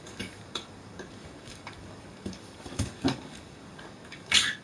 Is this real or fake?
fake